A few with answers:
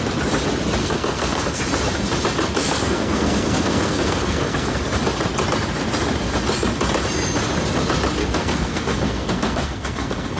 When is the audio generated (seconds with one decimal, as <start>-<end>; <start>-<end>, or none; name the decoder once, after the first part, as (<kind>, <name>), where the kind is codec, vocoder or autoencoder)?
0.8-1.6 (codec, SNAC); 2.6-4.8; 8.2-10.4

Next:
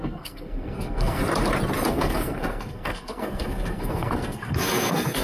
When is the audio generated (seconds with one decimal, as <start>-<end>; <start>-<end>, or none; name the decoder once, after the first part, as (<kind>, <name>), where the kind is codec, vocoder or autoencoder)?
0.0-1.2 (codec, SNAC); 1.9-5.2

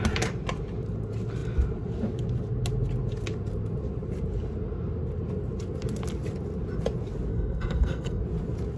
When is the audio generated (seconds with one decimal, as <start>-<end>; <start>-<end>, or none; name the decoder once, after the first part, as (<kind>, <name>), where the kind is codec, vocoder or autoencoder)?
7.3-8.2 (codec, SNAC)